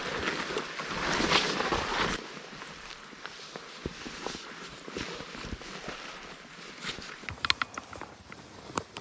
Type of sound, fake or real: real